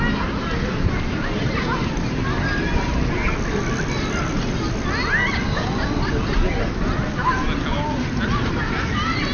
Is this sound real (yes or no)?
yes